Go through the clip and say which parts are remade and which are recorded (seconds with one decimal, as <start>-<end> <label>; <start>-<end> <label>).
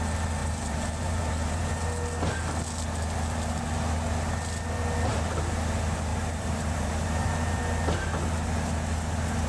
0.0-0.4 recorded; 0.4-1.7 remade; 1.7-6.1 recorded; 6.1-7.6 remade; 7.6-9.5 recorded